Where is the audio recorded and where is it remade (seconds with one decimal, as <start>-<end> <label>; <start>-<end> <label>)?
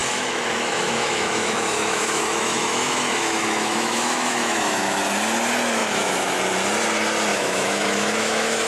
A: 0.0-5.0 remade; 5.0-5.8 recorded; 5.8-6.4 remade; 6.4-7.3 recorded; 7.3-8.7 remade